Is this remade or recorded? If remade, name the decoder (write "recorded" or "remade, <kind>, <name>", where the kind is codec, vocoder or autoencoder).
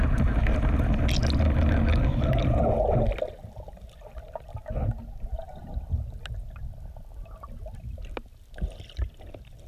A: recorded